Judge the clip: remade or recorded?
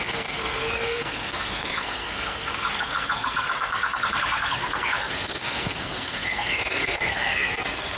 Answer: remade